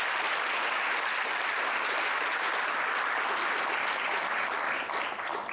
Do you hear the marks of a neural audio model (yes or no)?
no